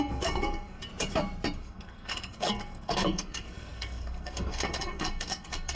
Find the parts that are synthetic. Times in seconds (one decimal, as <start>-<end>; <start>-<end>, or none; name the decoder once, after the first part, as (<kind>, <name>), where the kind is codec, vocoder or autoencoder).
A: 0.0-0.8 (codec, SNAC); 1.6-5.8